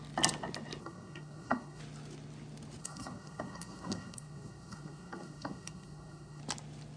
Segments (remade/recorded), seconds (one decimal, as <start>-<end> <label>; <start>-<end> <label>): 0.0-0.8 recorded; 0.8-1.8 remade; 1.8-2.8 recorded; 2.8-6.4 remade; 6.4-7.0 recorded